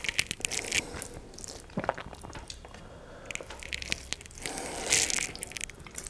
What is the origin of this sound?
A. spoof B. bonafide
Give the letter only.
B